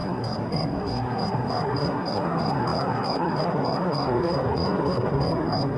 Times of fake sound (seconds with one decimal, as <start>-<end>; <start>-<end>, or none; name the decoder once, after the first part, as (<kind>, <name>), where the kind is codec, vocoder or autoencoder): 0.0-5.8 (codec, SNAC)